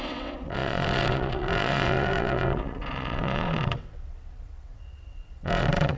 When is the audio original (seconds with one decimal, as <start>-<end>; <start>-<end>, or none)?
none